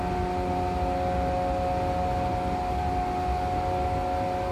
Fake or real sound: real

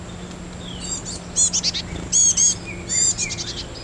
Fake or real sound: real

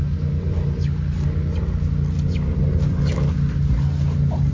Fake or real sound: real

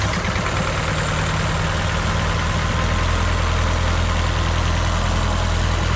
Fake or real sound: real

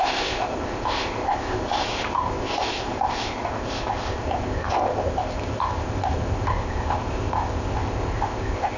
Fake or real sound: fake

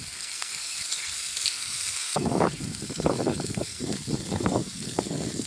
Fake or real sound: fake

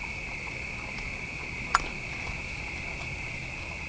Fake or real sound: real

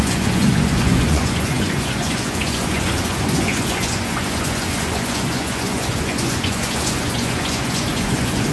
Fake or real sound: fake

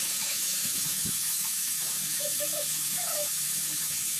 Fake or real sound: fake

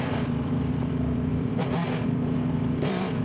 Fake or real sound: fake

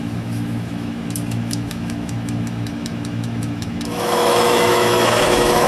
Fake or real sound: fake